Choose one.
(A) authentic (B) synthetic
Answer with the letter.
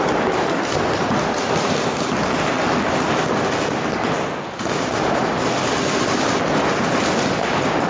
A